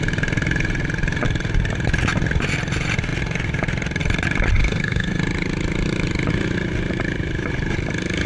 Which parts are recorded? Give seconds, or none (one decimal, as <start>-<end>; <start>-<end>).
0.0-4.6; 5.2-8.3